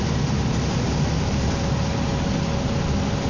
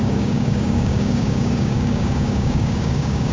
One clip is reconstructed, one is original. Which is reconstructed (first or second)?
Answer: second